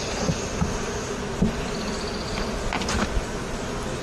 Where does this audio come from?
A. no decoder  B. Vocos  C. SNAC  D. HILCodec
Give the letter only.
A